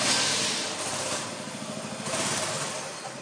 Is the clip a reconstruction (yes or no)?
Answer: no